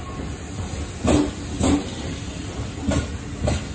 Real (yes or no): yes